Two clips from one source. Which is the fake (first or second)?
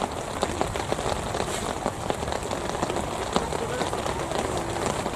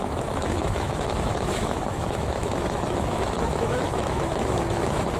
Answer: second